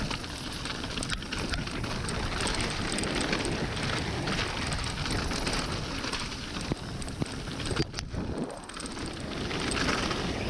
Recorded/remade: recorded